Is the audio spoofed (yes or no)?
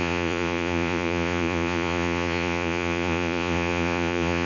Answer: yes